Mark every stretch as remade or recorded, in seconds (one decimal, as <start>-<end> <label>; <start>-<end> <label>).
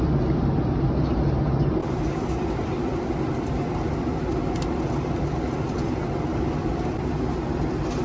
0.0-1.8 recorded; 1.8-4.3 remade; 4.3-6.3 recorded; 6.3-7.0 remade; 7.0-8.0 recorded